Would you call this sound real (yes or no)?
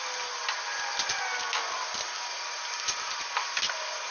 yes